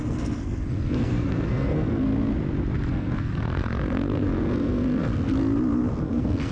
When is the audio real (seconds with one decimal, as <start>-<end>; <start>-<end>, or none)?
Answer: 2.1-2.9; 5.1-6.0